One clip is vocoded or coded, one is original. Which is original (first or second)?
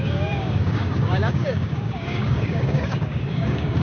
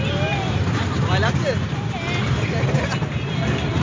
second